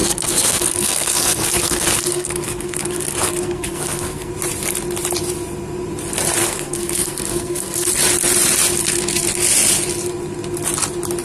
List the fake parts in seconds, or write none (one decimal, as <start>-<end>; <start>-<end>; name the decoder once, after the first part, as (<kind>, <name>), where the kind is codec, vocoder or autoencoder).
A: 0.0-4.3 (codec, SNAC); 6.4-7.9

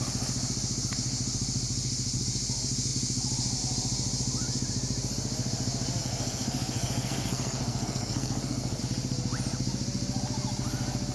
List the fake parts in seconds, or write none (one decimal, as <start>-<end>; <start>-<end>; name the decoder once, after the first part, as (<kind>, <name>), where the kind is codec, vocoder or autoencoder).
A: 6.0-8.8 (codec, SNAC)

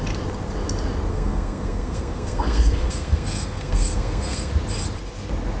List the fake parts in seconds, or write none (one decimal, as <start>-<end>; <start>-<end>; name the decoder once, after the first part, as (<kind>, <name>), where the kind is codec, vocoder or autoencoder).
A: 1.1-4.5 (codec, SNAC)

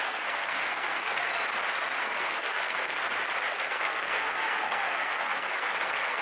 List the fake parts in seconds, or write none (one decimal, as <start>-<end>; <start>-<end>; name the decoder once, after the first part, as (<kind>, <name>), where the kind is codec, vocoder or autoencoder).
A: 0.0-1.3 (codec, SNAC); 2.0-3.0; 3.5-6.2